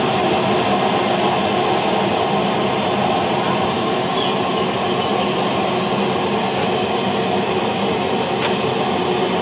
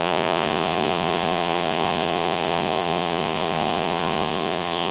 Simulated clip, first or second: second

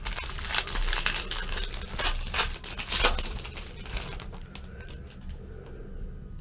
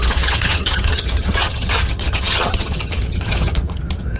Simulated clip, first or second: second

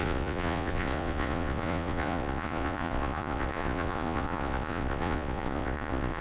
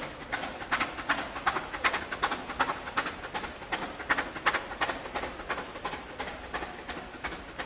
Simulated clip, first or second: first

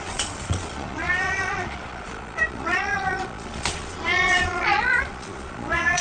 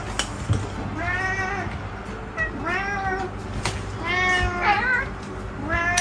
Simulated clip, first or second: first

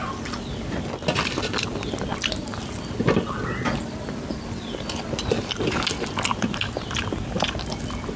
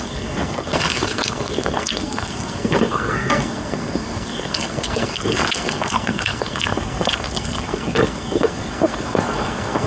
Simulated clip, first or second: second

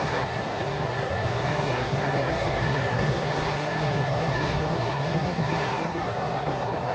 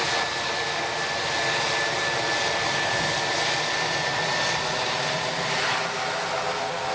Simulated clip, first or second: first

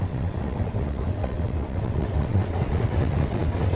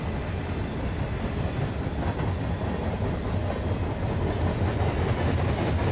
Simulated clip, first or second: first